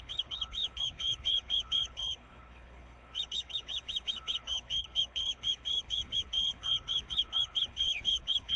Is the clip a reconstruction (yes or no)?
yes